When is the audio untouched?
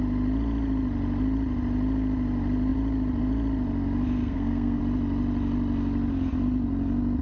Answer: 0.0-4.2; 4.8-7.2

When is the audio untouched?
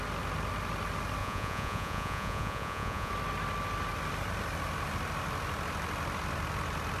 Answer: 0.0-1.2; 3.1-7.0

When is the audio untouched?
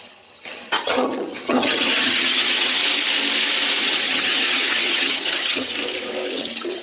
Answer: 2.8-3.8; 5.7-6.3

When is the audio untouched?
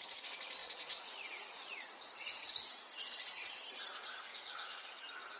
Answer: 0.0-0.6; 3.8-4.3; 5.0-5.4